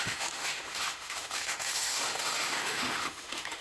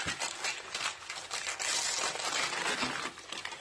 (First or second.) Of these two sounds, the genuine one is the second